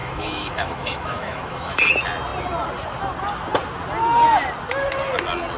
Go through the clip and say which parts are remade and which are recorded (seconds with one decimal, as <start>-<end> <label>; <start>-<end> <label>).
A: 0.0-1.9 remade; 1.9-5.6 recorded

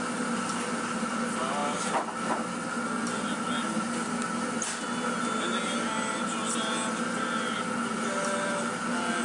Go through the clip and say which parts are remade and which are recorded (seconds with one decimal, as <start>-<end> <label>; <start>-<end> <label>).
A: 0.0-9.2 recorded

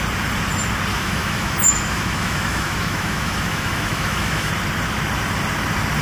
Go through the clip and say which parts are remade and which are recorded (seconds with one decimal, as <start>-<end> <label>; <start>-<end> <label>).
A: 0.0-0.9 recorded; 0.9-4.5 remade; 4.5-6.0 recorded

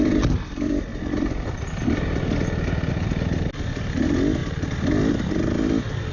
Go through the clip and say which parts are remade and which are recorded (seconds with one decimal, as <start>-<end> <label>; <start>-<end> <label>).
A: 0.0-6.1 recorded

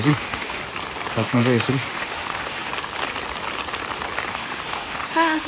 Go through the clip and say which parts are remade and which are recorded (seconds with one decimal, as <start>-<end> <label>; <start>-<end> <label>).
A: 0.0-0.6 remade; 0.6-1.1 recorded; 1.1-2.7 remade; 2.7-4.3 recorded; 4.3-5.5 remade

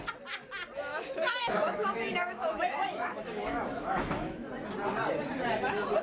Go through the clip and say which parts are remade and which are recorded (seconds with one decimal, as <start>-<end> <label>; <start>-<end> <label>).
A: 0.0-0.9 recorded; 0.9-4.5 remade; 4.5-6.0 recorded